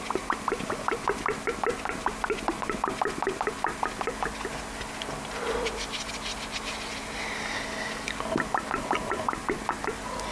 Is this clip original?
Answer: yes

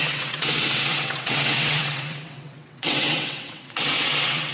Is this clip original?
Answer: no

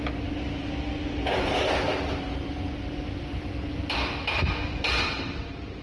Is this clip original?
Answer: yes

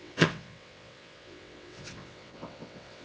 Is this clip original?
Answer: no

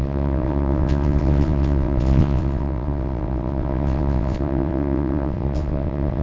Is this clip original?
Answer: no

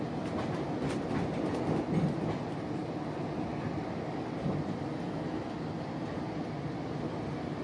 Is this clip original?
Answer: yes